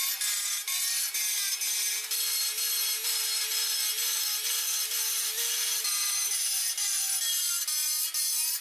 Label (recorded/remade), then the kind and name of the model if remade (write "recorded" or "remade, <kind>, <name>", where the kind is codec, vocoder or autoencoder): recorded